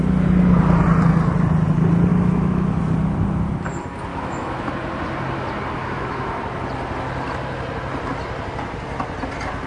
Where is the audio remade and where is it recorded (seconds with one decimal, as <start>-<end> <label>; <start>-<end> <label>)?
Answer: 0.0-2.1 recorded; 2.1-2.8 remade; 2.8-4.1 recorded; 4.1-4.7 remade; 4.7-5.8 recorded; 5.8-6.4 remade; 6.4-9.7 recorded